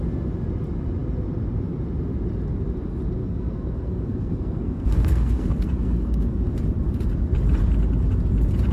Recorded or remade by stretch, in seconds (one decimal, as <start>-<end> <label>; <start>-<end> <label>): 0.0-3.2 recorded; 3.2-6.5 remade; 6.5-8.7 recorded